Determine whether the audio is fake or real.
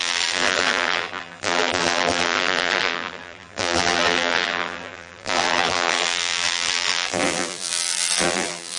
fake